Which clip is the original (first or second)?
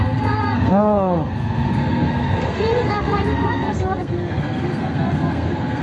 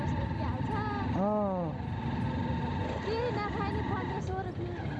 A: second